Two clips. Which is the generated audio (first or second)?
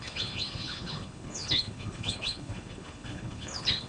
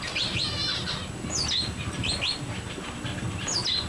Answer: first